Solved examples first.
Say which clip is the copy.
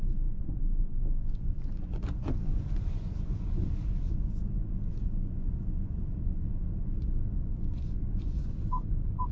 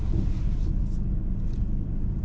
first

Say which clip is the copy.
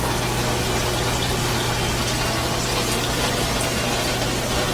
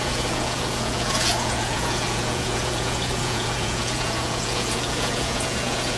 second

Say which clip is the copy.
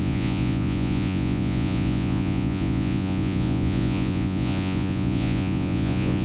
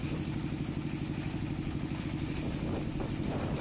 first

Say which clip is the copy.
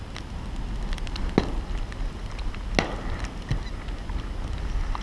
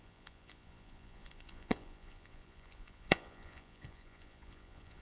second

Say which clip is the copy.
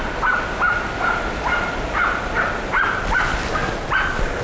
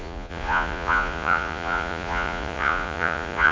second